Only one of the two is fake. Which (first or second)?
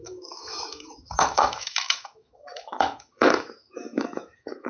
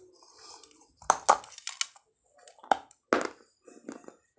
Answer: first